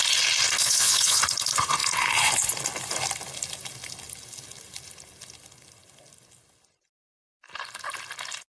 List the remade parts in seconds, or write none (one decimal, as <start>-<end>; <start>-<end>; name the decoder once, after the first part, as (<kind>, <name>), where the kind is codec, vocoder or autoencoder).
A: 0.6-1.2 (vocoder, Vocos)